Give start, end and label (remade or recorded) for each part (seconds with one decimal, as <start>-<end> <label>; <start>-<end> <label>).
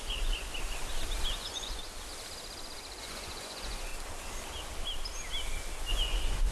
0.0-0.5 remade; 0.5-1.3 recorded; 1.3-1.8 remade; 1.8-3.0 recorded; 3.0-3.9 remade; 3.9-5.9 recorded; 5.9-6.5 remade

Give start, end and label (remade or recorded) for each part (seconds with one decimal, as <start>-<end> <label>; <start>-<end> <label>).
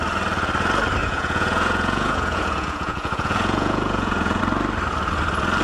0.0-1.0 recorded; 1.0-4.4 remade; 4.4-5.6 recorded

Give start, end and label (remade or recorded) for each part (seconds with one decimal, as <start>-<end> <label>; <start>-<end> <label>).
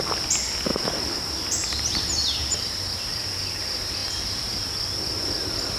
0.0-0.7 recorded; 0.7-1.8 remade; 1.8-2.4 recorded; 2.4-2.9 remade; 2.9-5.8 recorded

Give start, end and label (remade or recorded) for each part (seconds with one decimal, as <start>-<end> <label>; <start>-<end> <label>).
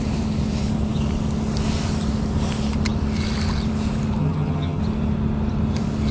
0.0-4.2 recorded; 4.2-4.8 remade; 4.8-6.1 recorded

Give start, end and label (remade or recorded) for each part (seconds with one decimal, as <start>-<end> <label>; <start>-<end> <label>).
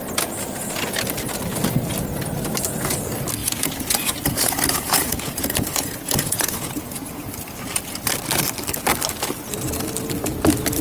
0.0-3.4 recorded; 3.4-7.3 remade; 7.3-10.8 recorded